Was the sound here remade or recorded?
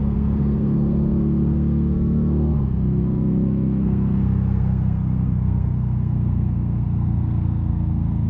remade